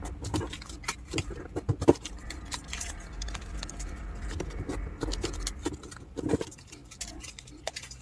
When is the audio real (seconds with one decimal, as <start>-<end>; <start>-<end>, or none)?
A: 0.0-8.0